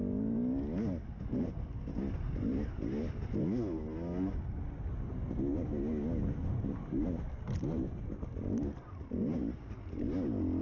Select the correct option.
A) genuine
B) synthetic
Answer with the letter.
A